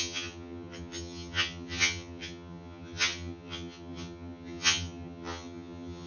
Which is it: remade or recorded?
remade